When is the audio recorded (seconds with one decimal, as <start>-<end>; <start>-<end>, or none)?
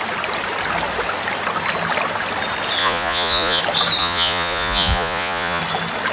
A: 0.0-2.8; 3.6-4.0; 5.6-6.1